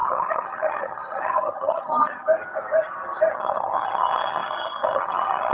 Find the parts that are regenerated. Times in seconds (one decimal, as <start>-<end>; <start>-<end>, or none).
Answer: 0.0-2.2; 3.3-5.5